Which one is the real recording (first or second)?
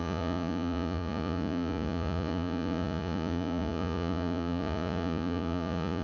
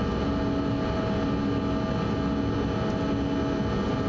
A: second